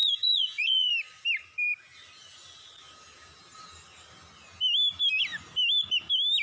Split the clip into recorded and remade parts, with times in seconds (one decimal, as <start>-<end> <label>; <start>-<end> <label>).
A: 0.0-0.9 remade; 0.9-6.4 recorded